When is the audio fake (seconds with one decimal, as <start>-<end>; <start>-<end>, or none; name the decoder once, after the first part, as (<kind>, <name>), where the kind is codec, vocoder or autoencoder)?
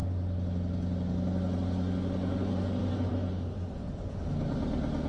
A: none